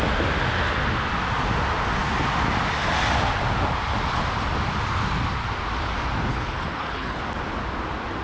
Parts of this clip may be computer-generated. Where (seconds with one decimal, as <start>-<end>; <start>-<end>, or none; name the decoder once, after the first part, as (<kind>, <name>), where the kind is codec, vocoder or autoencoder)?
6.3-7.2 (codec, HILCodec)